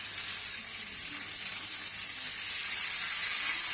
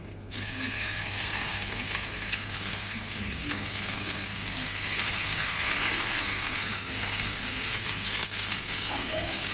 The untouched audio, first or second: first